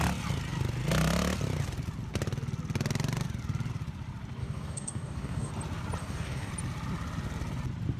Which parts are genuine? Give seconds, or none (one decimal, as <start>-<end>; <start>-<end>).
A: 0.0-4.4; 5.5-6.0; 6.5-8.0